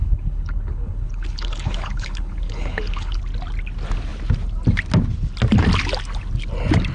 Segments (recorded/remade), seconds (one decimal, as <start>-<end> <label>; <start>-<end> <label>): 0.0-3.2 remade; 3.2-6.9 recorded